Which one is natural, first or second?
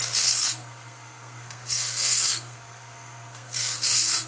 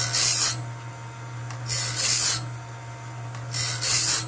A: second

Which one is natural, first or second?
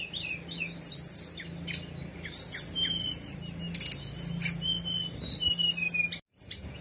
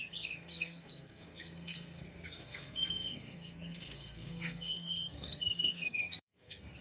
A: first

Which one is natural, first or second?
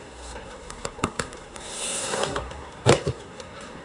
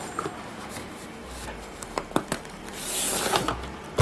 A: second